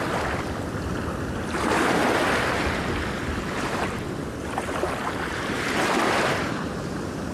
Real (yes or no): yes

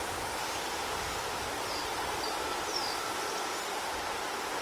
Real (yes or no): no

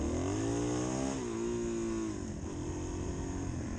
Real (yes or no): yes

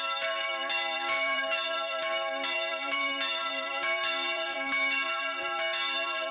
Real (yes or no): no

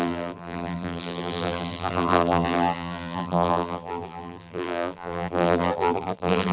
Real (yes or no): no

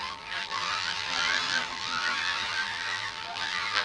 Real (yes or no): no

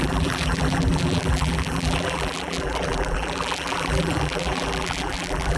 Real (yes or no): no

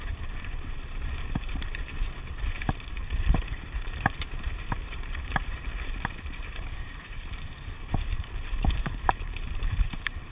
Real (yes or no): no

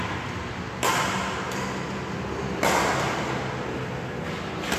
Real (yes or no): yes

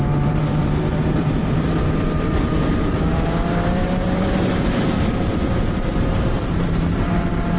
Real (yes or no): no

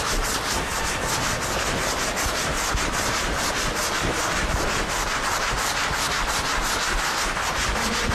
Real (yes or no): yes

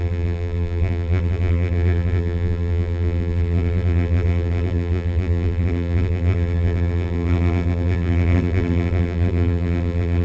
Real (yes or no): no